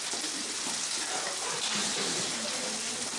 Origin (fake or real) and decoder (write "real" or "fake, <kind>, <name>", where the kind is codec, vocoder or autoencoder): real